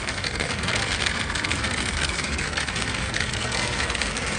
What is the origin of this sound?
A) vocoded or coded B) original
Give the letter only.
A